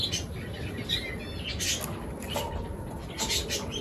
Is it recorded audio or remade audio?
recorded